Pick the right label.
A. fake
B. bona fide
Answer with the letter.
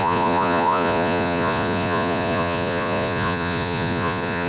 A